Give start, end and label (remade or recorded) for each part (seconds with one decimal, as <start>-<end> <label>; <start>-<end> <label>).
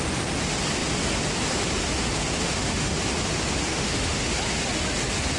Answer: 0.0-2.4 recorded; 2.4-3.0 remade; 3.0-3.7 recorded; 3.7-4.3 remade; 4.3-5.4 recorded